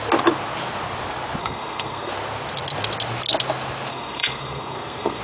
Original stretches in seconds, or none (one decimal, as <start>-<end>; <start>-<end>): 0.0-1.4; 2.1-3.9